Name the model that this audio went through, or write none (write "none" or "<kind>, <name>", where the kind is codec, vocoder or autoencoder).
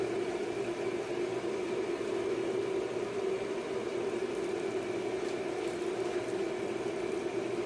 none